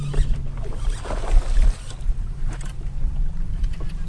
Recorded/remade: recorded